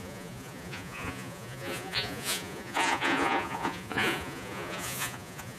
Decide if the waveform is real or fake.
fake